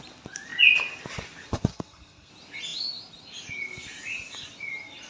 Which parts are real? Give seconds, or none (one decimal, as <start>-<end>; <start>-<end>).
0.0-1.7; 2.3-5.1

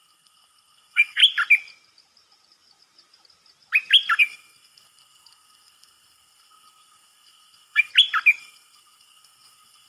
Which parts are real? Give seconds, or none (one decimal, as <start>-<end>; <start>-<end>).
1.2-4.2; 7.9-8.4

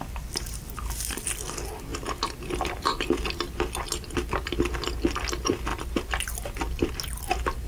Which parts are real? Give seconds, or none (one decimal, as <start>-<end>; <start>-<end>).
0.0-7.7

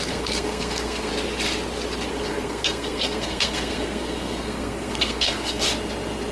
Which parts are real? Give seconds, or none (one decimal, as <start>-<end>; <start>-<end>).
1.1-2.1; 5.7-6.3

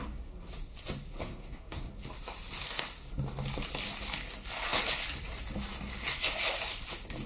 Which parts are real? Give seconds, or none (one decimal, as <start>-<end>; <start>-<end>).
0.0-1.2; 1.9-7.3

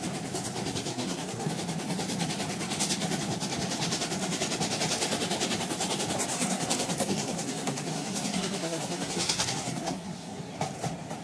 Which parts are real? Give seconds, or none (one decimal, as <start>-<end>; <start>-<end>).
0.0-0.9; 1.5-6.3; 10.5-11.2